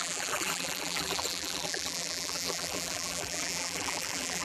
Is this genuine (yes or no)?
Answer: no